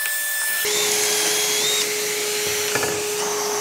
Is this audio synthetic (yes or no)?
no